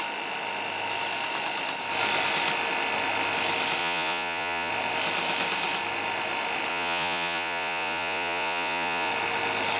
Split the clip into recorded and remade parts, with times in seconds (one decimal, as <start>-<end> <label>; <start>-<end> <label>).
0.0-3.8 recorded; 3.8-4.7 remade; 4.7-6.7 recorded; 6.7-9.1 remade; 9.1-9.8 recorded